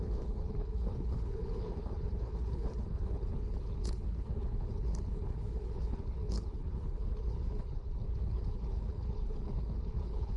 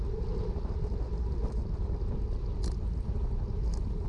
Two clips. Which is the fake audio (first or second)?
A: first